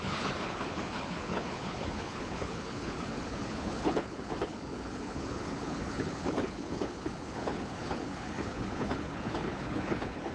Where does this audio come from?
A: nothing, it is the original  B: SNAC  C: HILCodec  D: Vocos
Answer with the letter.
C